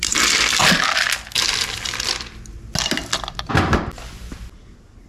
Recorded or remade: recorded